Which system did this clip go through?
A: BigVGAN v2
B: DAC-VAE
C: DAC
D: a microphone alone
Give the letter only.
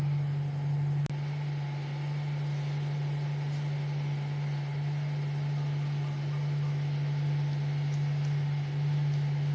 D